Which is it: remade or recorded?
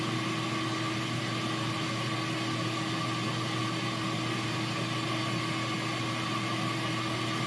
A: recorded